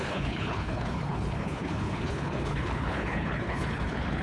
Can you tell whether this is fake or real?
fake